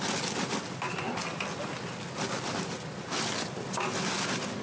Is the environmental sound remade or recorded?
recorded